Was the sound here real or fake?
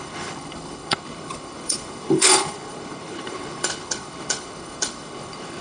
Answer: fake